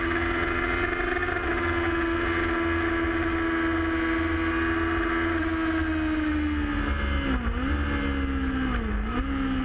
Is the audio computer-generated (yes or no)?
no